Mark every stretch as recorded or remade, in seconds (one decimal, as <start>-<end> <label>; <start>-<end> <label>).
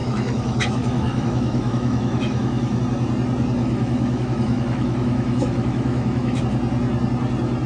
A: 0.0-2.8 remade; 2.8-3.6 recorded; 3.6-6.4 remade; 6.4-7.7 recorded